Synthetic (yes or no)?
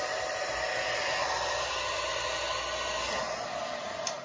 no